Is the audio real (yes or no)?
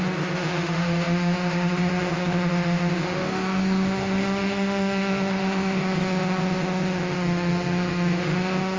no